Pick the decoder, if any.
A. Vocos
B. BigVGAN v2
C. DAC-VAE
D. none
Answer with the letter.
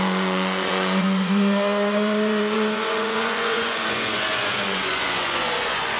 A